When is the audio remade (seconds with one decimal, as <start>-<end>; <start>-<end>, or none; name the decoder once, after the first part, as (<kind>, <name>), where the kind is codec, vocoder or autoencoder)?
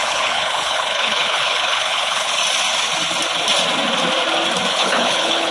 0.0-2.4 (codec, HILCodec); 4.7-5.5